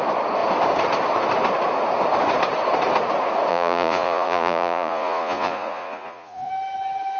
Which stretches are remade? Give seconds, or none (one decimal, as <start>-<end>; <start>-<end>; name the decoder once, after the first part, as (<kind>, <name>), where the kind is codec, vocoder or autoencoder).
3.5-6.5 (vocoder, Vocos)